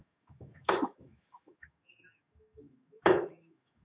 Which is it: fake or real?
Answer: fake